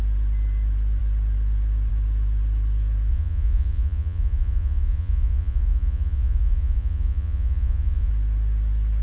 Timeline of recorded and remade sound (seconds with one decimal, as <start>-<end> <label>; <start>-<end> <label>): 0.0-3.1 recorded; 3.1-8.1 remade; 8.1-9.0 recorded

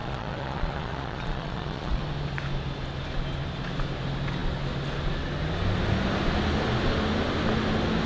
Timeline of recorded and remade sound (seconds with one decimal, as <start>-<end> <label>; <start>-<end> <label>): 0.0-2.0 remade; 2.0-8.1 recorded

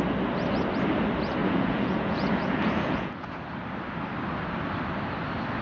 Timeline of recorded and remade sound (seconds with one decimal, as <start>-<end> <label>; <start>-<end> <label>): 0.0-1.4 recorded; 1.4-3.4 remade; 3.4-5.6 recorded

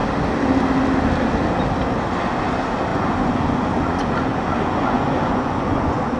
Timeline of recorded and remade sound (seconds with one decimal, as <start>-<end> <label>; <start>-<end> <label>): 0.0-2.9 recorded; 2.9-6.2 remade